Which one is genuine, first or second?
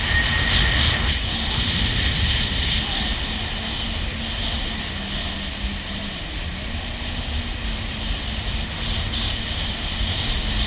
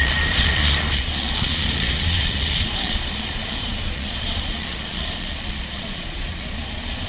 first